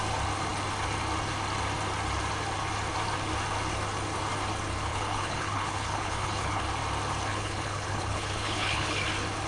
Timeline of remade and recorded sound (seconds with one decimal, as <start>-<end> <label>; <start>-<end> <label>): 0.0-4.9 recorded; 4.9-6.6 remade; 6.6-7.3 recorded; 7.3-9.0 remade; 9.0-9.5 recorded